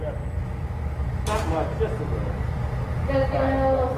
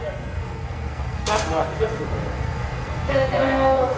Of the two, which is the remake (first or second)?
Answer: second